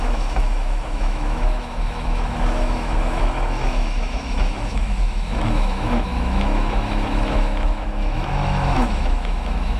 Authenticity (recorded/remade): remade